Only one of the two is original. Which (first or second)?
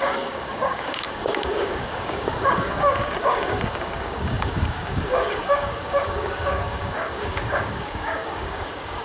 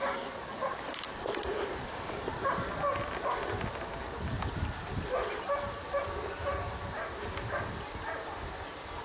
second